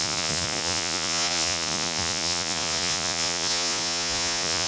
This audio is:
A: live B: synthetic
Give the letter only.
B